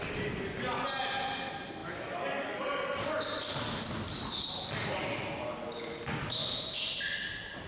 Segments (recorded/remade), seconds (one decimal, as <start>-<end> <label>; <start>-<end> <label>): 0.0-7.7 recorded